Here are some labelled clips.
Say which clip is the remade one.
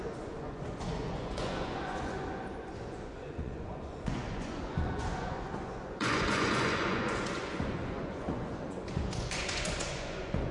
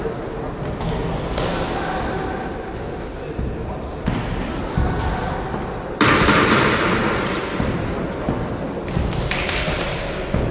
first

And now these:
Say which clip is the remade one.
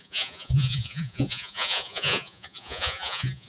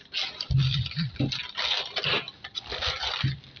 first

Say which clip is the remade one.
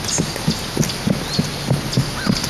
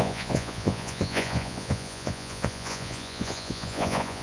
second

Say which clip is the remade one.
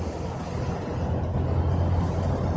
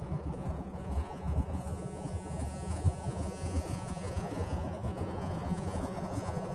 second